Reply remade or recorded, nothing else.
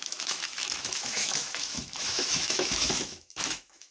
remade